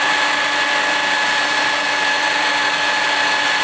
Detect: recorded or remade recorded